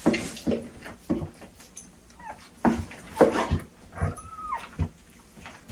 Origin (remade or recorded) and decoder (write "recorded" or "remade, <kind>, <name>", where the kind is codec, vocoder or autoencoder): remade, vocoder, BigVGAN v2